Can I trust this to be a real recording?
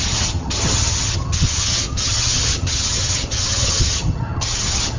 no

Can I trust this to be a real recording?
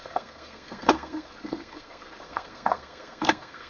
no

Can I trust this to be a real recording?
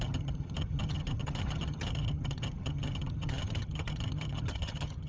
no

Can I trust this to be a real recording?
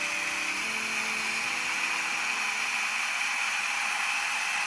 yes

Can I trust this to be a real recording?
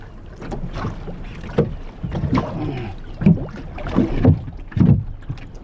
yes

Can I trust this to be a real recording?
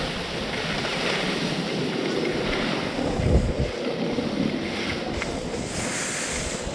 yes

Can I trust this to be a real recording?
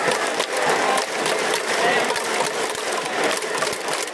yes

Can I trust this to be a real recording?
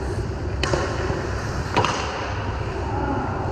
yes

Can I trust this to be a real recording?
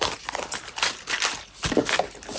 yes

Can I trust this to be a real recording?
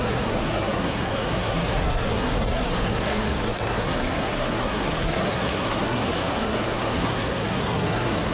no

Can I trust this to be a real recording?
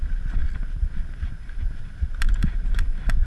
yes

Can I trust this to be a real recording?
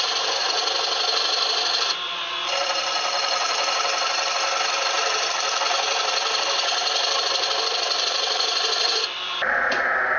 no